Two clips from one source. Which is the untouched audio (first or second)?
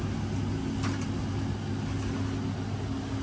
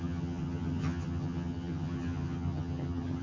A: first